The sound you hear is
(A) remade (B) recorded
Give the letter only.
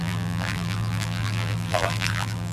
A